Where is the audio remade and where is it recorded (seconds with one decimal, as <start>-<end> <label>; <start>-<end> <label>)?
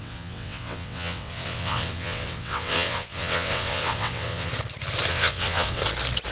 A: 0.0-4.5 remade; 4.5-5.1 recorded; 5.1-5.8 remade; 5.8-6.3 recorded